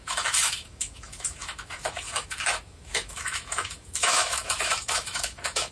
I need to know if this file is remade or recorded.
remade